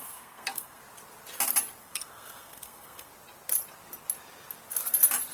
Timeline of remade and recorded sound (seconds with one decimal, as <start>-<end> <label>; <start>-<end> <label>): 0.0-0.8 remade; 0.8-1.8 recorded; 1.8-3.1 remade; 3.1-5.3 recorded